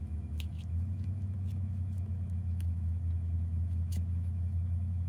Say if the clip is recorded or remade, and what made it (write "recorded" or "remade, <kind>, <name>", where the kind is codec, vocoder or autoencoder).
remade, autoencoder, DAC-VAE